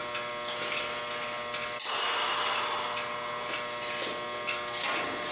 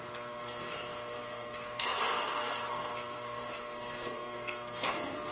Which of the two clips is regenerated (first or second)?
second